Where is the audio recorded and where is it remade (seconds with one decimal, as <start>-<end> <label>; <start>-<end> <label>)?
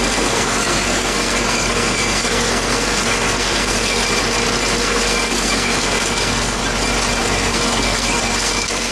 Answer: 0.0-4.0 remade; 4.0-4.8 recorded; 4.8-6.6 remade; 6.6-7.2 recorded; 7.2-8.9 remade